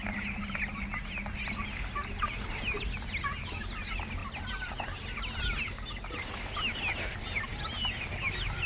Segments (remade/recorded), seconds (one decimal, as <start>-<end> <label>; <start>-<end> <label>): 0.0-8.7 recorded